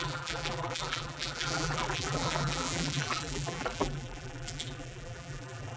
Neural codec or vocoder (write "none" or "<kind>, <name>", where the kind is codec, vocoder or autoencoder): vocoder, BigVGAN v2